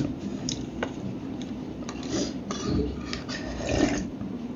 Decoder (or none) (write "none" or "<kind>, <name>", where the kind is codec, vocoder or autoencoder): vocoder, BigVGAN v2